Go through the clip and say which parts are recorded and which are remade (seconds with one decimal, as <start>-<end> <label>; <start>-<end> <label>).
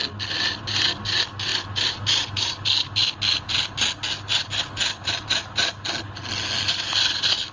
0.0-7.5 recorded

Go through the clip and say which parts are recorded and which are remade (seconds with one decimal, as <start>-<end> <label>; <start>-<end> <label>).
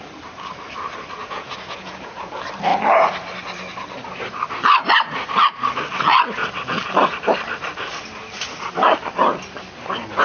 0.0-1.2 recorded; 1.2-2.3 remade; 2.3-10.2 recorded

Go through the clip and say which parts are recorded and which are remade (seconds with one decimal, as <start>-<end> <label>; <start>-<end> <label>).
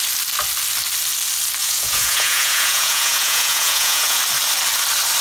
0.0-1.6 recorded; 1.6-4.2 remade; 4.2-5.2 recorded